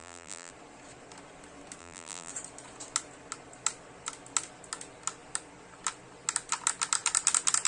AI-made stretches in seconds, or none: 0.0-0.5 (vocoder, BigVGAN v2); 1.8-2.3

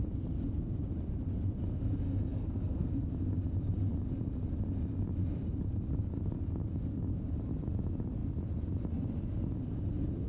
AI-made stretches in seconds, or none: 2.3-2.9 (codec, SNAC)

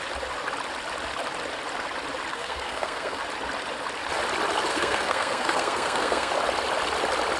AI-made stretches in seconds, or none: 2.3-3.2 (codec, SNAC); 4.7-6.3

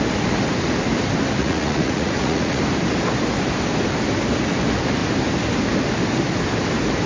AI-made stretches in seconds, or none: 1.4-2.6 (vocoder, Vocos)

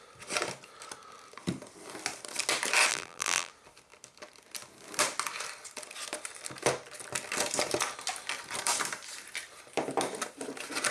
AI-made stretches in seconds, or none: 2.9-3.5 (vocoder, BigVGAN v2)

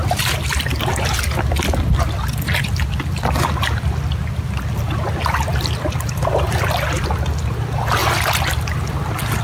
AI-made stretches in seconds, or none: none

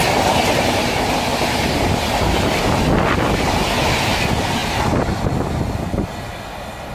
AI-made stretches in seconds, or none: 1.3-1.8 (vocoder, BigVGAN v2)

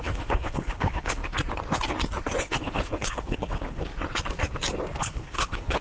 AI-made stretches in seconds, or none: 0.0-1.2 (codec, HILCodec); 2.4-3.9; 5.0-5.8